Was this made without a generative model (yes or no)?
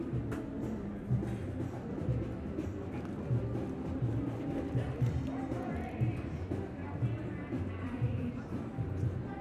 yes